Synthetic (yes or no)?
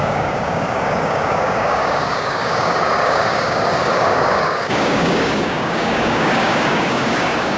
yes